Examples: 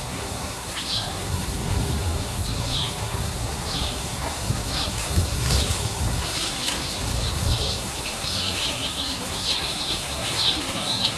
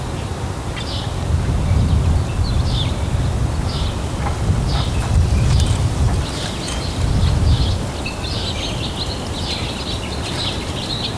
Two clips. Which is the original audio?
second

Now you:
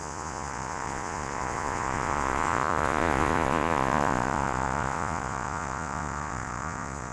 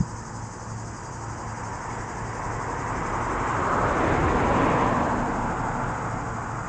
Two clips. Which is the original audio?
second